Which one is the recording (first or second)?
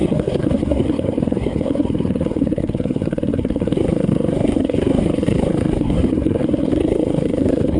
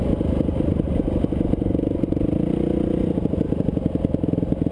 second